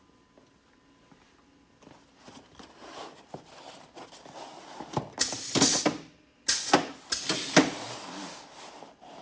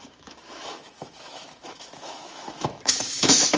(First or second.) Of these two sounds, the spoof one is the second